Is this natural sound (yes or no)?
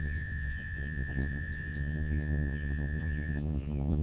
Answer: no